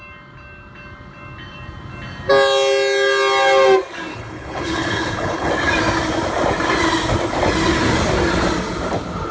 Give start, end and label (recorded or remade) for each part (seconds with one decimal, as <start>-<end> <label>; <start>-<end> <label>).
0.0-4.1 recorded; 4.1-5.5 remade; 5.5-9.3 recorded